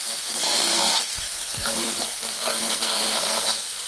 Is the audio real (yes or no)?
no